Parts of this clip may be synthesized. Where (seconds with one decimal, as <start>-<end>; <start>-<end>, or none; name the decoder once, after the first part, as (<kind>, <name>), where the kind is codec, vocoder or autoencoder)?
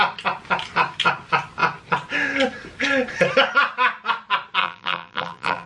4.6-5.7 (vocoder, BigVGAN v2)